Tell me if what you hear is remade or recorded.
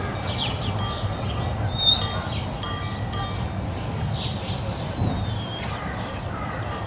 recorded